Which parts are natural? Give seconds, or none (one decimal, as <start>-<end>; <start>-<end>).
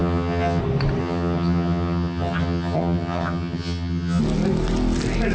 0.6-1.0; 4.2-5.3